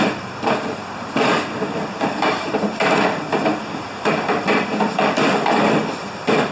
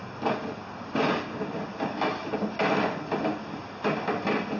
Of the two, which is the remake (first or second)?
first